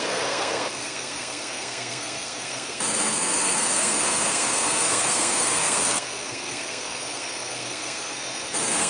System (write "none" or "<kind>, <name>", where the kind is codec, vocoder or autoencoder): codec, SNAC